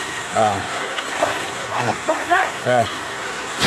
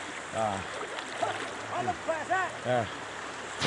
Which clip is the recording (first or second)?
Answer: second